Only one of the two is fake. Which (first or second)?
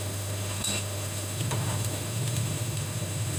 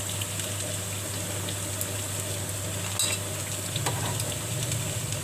first